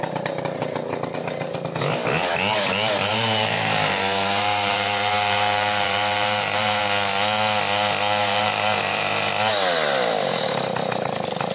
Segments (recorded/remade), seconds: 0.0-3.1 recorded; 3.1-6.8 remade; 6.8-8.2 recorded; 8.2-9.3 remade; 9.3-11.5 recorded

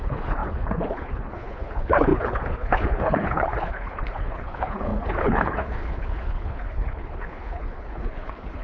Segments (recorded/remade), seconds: 0.0-8.6 remade

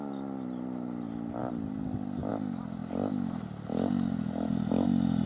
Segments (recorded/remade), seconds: 0.0-5.3 recorded